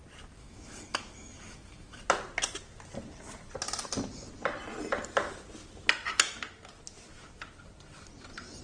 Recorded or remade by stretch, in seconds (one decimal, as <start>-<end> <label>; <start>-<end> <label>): 0.0-0.4 recorded; 0.4-2.0 remade; 2.0-8.6 recorded